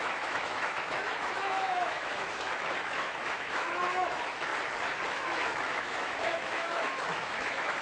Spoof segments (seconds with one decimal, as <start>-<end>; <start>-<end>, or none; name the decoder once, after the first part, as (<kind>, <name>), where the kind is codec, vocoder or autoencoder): 0.0-4.5 (autoencoder, DAC-VAE); 5.1-7.8